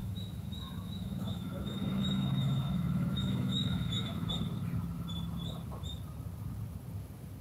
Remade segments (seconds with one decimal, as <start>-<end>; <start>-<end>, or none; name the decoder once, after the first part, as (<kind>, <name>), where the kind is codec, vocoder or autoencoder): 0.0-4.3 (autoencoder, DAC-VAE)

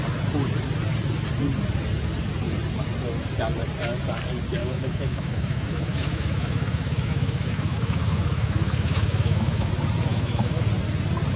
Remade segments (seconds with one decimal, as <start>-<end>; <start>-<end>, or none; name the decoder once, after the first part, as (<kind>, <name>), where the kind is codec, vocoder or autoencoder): 4.6-9.7 (autoencoder, DAC-VAE); 10.1-10.6

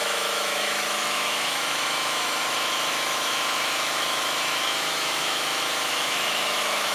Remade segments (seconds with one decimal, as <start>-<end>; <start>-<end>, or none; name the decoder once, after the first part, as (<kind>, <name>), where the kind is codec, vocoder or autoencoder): 0.0-6.9 (autoencoder, DAC-VAE)

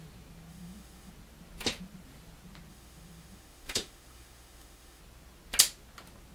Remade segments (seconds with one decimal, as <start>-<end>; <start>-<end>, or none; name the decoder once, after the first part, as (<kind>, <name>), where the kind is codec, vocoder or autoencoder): 0.5-1.1 (autoencoder, DAC-VAE); 2.7-5.0

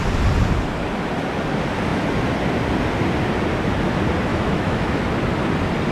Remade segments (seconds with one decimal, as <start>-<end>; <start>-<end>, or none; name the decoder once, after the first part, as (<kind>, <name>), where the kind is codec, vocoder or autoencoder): 4.3-5.0 (autoencoder, DAC-VAE)

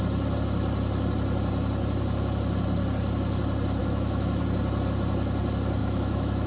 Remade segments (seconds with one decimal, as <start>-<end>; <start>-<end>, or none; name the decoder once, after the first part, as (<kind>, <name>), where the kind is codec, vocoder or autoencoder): 3.8-4.4 (autoencoder, DAC-VAE); 5.8-6.5

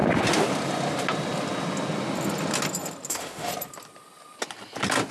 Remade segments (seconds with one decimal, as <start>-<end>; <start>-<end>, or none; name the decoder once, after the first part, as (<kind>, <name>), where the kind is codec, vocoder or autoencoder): 3.1-3.5 (autoencoder, DAC-VAE)

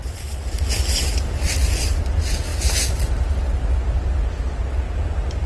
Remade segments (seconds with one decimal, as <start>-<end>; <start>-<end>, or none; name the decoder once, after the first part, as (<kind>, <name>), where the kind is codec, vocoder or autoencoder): none